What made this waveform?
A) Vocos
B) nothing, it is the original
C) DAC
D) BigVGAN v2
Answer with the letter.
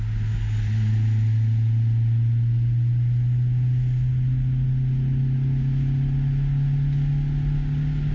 B